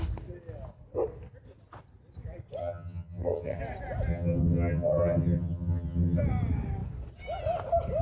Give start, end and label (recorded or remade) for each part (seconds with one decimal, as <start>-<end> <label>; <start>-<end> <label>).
0.0-2.6 recorded; 2.6-3.6 remade; 3.6-4.1 recorded; 4.1-6.2 remade; 6.2-8.0 recorded